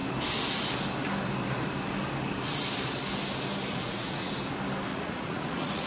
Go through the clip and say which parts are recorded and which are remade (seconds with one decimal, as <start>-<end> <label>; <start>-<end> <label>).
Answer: 0.0-3.7 recorded; 3.7-4.3 remade; 4.3-4.9 recorded; 4.9-5.9 remade